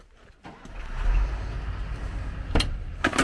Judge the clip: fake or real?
real